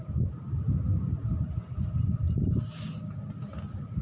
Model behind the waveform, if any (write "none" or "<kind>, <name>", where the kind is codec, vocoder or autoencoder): none